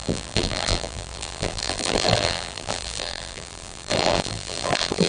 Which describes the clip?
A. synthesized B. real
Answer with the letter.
A